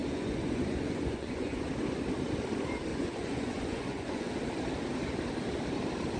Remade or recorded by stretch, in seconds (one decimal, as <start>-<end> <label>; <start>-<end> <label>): 0.0-1.7 remade; 1.7-2.9 recorded; 2.9-4.3 remade; 4.3-6.2 recorded